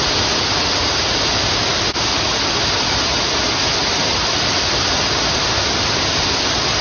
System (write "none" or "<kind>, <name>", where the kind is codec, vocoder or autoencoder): none